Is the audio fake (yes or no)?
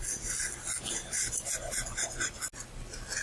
no